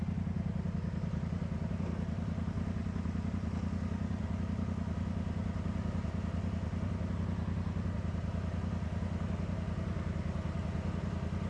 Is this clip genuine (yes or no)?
yes